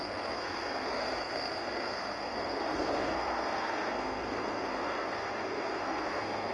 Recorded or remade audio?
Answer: remade